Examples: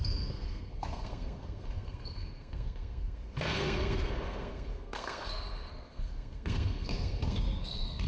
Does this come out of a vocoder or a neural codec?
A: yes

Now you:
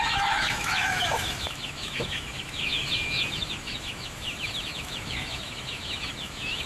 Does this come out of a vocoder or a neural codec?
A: yes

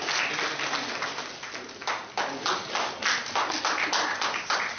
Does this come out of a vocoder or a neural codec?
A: no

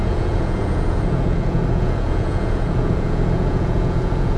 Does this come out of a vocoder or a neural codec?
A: yes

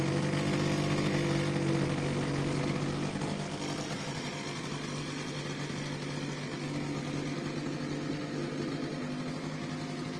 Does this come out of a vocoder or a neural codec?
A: no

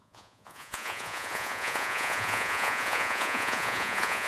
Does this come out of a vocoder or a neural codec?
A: yes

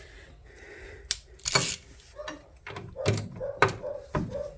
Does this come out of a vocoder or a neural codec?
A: no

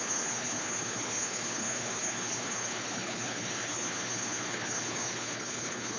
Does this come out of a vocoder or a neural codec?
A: yes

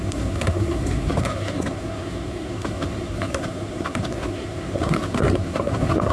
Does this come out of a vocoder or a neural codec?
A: yes